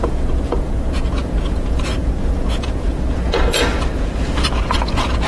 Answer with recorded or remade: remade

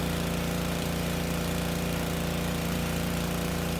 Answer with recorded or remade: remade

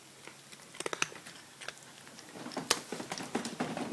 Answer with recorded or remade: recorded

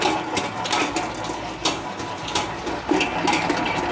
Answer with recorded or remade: recorded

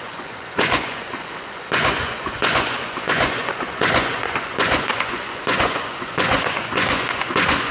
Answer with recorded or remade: remade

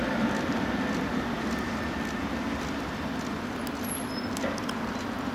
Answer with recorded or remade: recorded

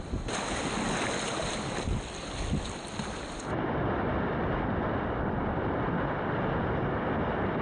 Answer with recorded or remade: recorded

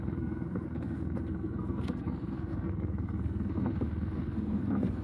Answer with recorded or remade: remade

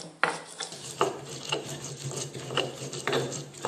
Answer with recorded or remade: recorded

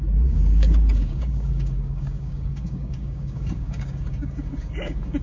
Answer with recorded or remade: remade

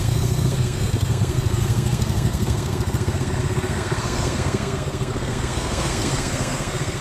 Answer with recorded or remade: remade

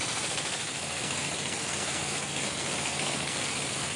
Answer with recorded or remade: remade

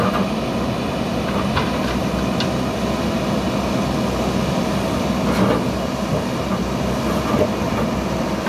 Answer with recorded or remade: recorded